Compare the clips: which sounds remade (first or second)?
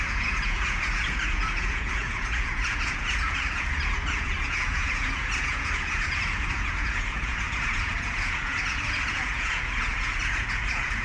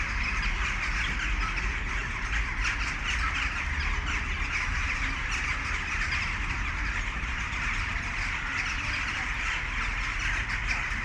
first